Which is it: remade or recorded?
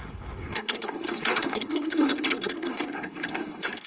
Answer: remade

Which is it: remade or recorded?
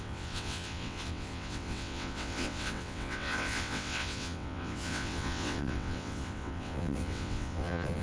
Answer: remade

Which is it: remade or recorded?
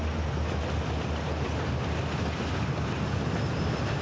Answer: recorded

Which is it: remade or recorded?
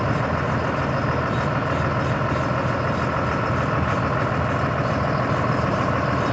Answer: recorded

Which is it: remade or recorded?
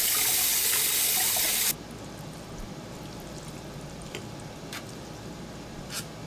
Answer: recorded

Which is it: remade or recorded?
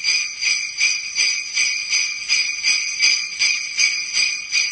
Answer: recorded